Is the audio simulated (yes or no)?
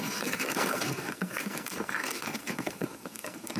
yes